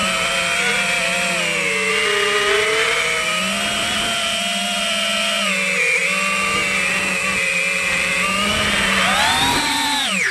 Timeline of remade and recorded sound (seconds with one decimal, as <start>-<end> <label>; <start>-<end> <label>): 0.0-10.3 recorded